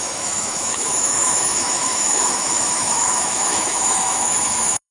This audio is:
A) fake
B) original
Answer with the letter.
A